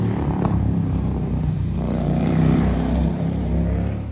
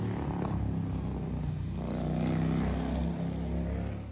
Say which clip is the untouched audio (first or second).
second